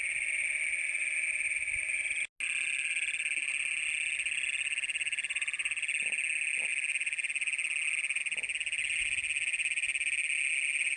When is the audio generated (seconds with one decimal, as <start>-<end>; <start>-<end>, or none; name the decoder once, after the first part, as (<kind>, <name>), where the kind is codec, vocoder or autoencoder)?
none